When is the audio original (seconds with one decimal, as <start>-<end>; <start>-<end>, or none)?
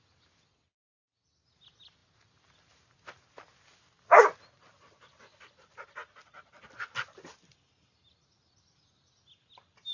0.0-9.9